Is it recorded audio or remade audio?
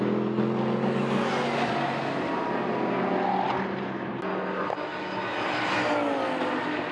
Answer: recorded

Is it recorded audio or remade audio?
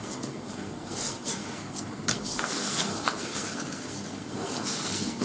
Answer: remade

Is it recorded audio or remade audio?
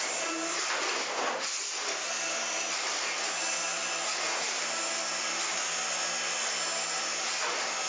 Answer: recorded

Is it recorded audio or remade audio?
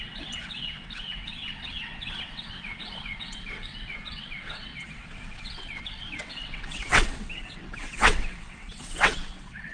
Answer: remade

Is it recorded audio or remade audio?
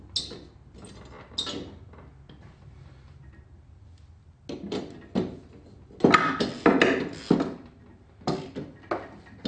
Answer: recorded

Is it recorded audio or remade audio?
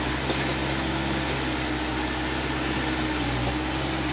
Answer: recorded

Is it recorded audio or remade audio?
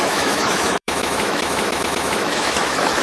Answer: remade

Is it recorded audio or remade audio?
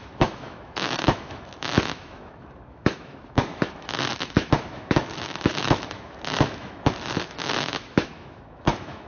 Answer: remade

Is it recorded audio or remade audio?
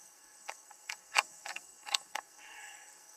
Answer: remade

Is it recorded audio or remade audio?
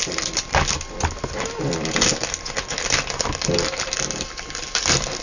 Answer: recorded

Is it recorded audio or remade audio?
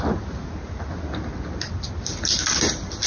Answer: recorded